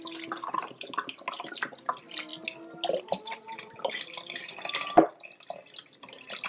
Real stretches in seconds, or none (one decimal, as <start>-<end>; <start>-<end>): 0.0-6.5